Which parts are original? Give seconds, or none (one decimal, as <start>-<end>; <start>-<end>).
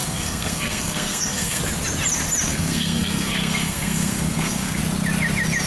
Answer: 1.6-2.5; 4.8-5.7